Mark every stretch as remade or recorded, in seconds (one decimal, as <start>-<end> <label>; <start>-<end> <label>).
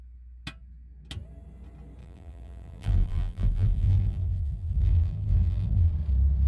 0.0-2.0 recorded; 2.0-5.9 remade; 5.9-6.5 recorded